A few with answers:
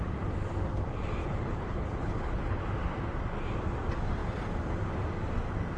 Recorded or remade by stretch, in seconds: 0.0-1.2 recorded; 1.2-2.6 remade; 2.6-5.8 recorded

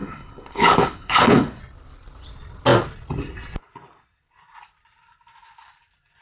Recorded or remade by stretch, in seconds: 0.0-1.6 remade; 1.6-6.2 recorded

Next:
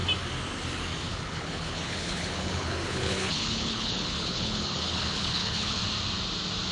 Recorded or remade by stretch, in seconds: 0.0-1.0 recorded; 1.0-5.8 remade; 5.8-6.7 recorded